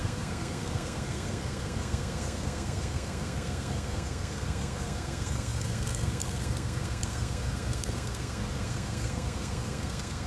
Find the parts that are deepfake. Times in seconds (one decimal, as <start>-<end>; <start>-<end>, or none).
0.0-10.3

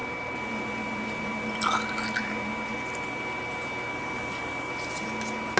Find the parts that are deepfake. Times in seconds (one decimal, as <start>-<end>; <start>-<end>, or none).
3.9-4.7

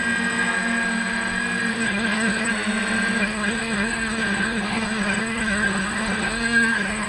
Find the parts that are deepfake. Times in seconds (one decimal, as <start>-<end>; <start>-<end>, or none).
1.7-2.5; 3.2-7.1

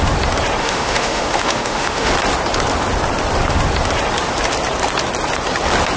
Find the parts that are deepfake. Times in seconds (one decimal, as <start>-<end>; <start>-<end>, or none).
0.6-2.1

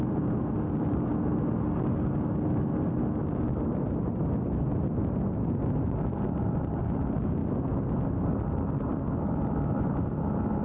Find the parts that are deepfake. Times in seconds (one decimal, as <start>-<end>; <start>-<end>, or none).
0.0-1.1; 6.1-7.4; 8.5-8.9

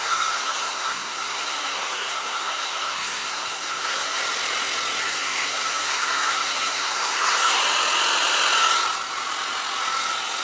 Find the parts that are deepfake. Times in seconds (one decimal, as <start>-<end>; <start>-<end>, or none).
0.0-4.2; 5.0-7.6

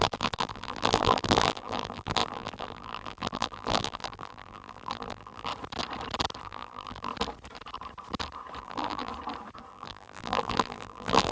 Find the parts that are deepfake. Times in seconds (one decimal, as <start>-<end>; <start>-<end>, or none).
0.0-5.5; 6.4-7.1; 8.6-9.1; 9.7-11.3